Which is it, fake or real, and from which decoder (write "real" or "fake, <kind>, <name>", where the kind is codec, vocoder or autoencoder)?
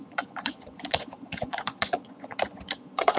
fake, vocoder, Vocos